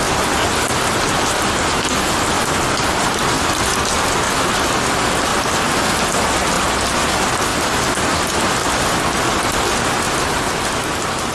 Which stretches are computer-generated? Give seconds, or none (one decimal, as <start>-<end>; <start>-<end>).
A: none